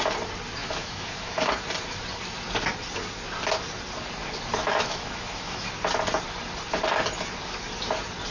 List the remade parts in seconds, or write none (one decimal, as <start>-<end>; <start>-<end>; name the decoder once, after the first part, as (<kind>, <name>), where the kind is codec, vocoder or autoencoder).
0.6-1.5 (autoencoder, DAC-VAE); 4.6-5.7